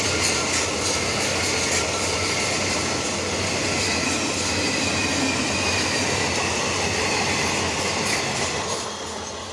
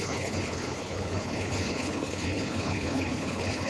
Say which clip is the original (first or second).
first